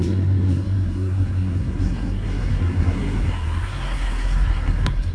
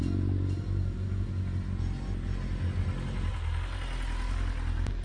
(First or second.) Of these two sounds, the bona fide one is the second